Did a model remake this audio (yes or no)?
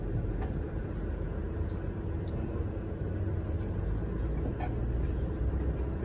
no